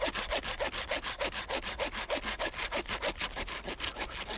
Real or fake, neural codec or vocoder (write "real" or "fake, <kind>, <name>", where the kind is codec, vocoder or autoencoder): real